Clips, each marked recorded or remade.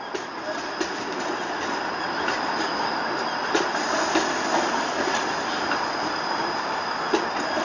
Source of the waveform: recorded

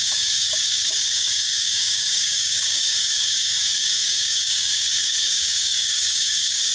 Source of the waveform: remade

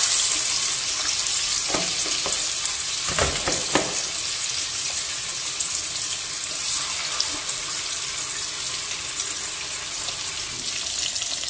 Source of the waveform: recorded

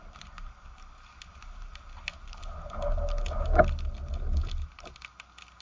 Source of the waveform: recorded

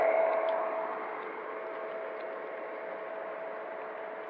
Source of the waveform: recorded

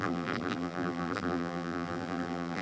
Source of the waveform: remade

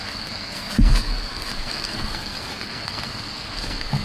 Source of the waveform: remade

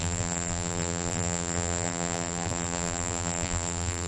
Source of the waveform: remade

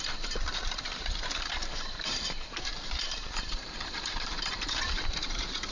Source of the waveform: remade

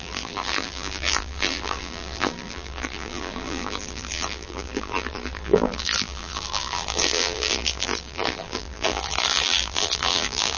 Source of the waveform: remade